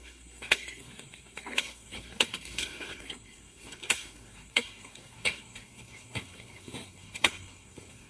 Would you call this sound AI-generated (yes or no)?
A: yes